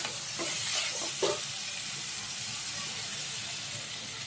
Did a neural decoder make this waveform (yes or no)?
no